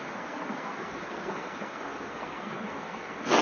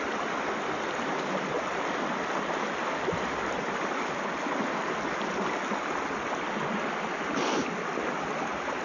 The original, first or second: second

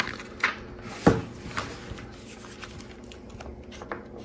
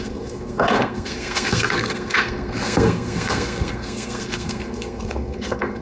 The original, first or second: first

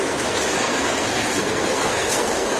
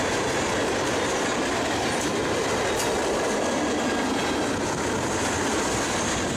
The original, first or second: second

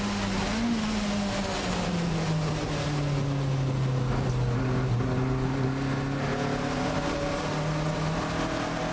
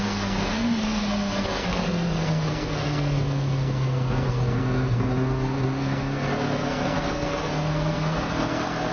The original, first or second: first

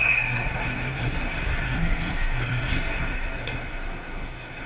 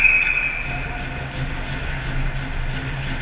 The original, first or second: second